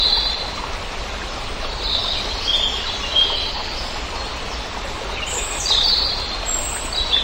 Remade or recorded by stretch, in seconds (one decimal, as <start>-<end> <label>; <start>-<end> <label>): 0.0-7.2 recorded